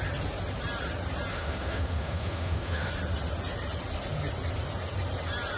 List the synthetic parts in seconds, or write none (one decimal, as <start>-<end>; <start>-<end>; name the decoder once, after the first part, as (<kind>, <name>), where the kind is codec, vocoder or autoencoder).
1.3-2.9 (autoencoder, DAC-VAE)